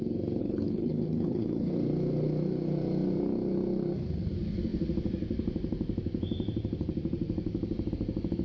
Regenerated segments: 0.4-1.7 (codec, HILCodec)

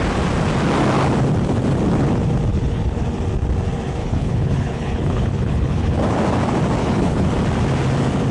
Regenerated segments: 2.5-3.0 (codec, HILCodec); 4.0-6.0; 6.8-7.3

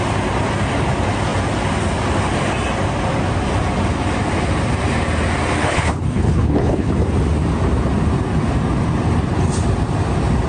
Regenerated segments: 5.6-6.9 (codec, HILCodec)

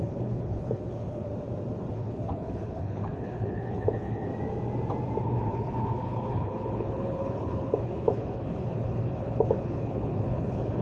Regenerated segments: 0.0-1.3 (codec, HILCodec); 1.9-4.3; 5.2-10.8

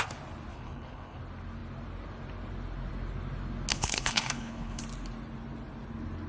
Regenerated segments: 0.5-1.2 (codec, HILCodec); 3.7-4.8